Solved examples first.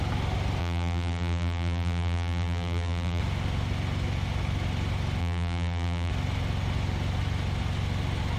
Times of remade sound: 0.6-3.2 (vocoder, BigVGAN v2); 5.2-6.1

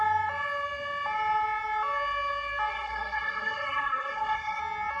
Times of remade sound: 2.7-4.6 (codec, SNAC)

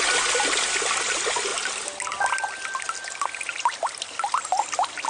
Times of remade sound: none

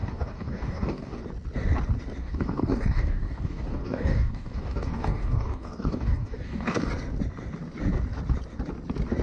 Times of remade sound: 0.0-1.2 (codec, DAC); 2.2-6.9

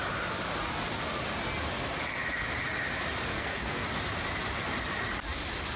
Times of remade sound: 3.3-3.8 (codec, SNAC)

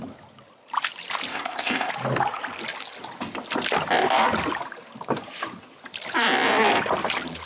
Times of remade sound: 1.3-1.9 (codec, ZipCodec)

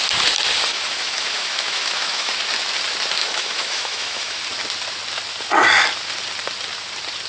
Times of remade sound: 0.7-2.3 (autoencoder, DAC-VAE); 3.2-4.4

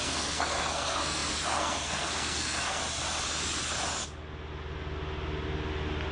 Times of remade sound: 0.0-2.8 (codec, SNAC)